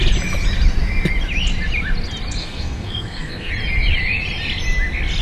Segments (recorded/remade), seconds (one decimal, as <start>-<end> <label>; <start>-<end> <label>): 0.0-2.4 recorded; 2.4-3.5 remade; 3.5-5.2 recorded